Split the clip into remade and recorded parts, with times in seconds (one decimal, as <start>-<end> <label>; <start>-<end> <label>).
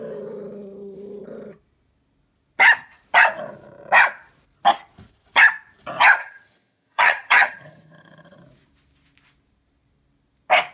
0.0-6.2 recorded; 6.2-8.4 remade; 8.4-10.7 recorded